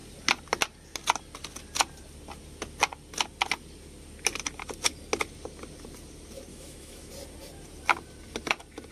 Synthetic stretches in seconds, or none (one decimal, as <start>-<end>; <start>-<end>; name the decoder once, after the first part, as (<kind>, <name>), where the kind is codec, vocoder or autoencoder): 6.5-7.1 (autoencoder, DAC-VAE)